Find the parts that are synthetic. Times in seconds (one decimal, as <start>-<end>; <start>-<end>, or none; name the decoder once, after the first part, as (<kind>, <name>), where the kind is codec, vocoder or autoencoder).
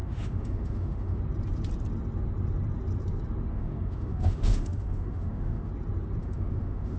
0.0-1.2 (autoencoder, DAC-VAE); 3.5-5.7; 6.2-7.0